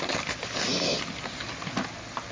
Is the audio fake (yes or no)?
no